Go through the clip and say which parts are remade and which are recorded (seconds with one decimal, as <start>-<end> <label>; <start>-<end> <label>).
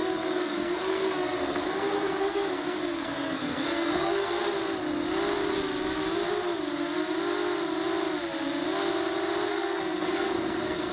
0.0-4.4 remade; 4.4-9.5 recorded; 9.5-10.9 remade